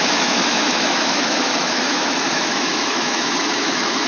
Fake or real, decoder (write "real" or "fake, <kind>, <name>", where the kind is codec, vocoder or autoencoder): fake, autoencoder, DAC-VAE